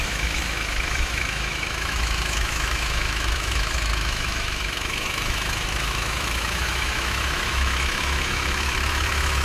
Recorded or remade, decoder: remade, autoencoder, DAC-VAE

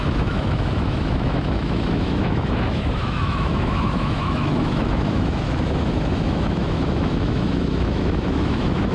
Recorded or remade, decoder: remade, autoencoder, DAC-VAE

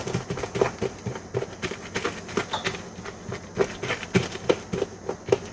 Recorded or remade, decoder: recorded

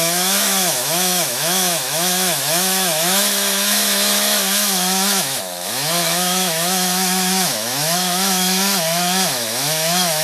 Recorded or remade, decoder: remade, autoencoder, DAC-VAE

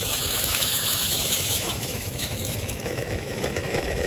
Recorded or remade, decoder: remade, autoencoder, DAC-VAE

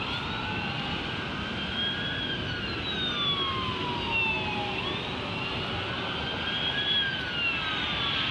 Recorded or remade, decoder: recorded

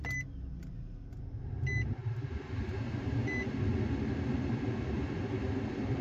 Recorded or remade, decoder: recorded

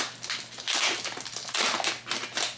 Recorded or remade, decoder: recorded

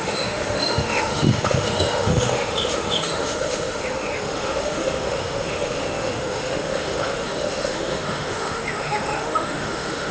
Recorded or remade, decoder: remade, autoencoder, DAC-VAE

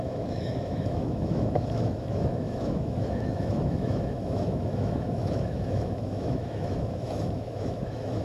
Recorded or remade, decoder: remade, autoencoder, DAC-VAE